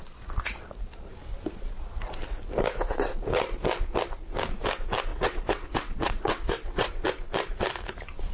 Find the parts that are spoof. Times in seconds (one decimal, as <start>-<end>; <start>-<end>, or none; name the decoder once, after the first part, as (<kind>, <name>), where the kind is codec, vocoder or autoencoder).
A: 5.1-7.0 (vocoder, WaveNeXt)